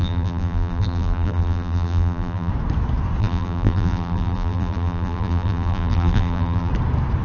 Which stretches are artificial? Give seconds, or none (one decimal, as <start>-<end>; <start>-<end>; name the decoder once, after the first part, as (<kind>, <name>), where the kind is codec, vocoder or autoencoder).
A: 0.0-2.5 (vocoder, BigVGAN v2); 3.2-6.7